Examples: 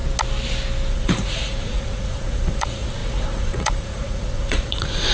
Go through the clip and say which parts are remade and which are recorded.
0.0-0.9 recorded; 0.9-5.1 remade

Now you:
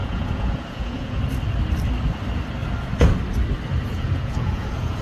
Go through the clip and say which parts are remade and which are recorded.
0.0-1.2 remade; 1.2-3.9 recorded; 3.9-5.0 remade

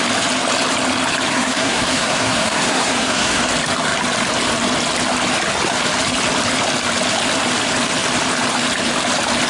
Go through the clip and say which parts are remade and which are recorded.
0.0-1.3 recorded; 1.3-3.4 remade; 3.4-9.5 recorded

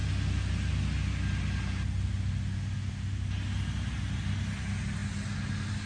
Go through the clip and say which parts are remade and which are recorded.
0.0-5.9 recorded

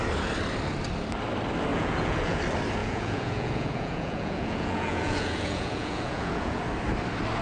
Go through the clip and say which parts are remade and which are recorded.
0.0-1.7 recorded; 1.7-2.4 remade; 2.4-2.8 recorded; 2.8-6.6 remade; 6.6-7.4 recorded

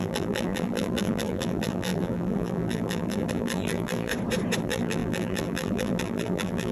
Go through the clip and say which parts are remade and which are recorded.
0.0-4.1 remade; 4.1-4.6 recorded; 4.6-6.7 remade

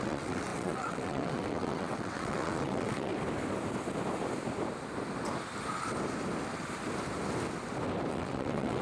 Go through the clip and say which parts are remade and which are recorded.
0.0-3.1 remade; 3.1-8.1 recorded; 8.1-8.8 remade